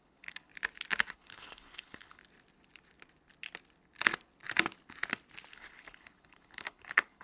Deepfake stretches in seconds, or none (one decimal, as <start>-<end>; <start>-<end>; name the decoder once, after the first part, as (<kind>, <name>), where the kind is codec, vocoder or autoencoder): 0.0-0.5 (codec, HILCodec); 1.1-2.2; 5.5-7.2